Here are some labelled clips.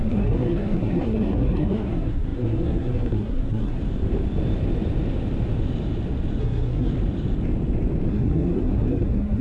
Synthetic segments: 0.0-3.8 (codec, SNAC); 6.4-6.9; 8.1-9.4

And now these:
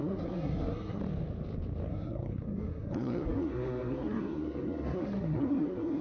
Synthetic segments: 0.0-1.0 (codec, SNAC); 1.9-6.0

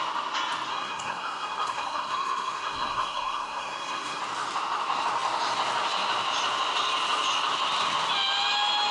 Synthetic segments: 0.7-4.2 (codec, SNAC)

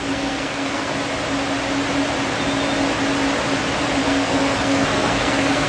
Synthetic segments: 0.0-0.9 (codec, SNAC); 4.0-5.7

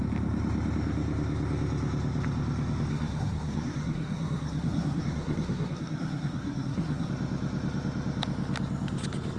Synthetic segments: 2.9-7.1 (codec, SNAC)

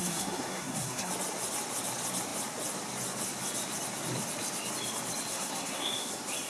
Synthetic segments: 0.0-1.1 (codec, SNAC); 5.3-6.1

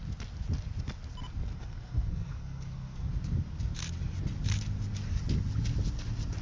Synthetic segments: 1.5-3.1 (codec, SNAC)

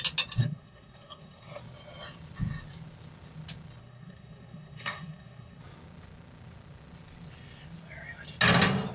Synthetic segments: 0.4-1.6 (codec, SNAC); 3.8-5.6